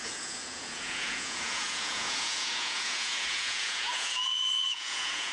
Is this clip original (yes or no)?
no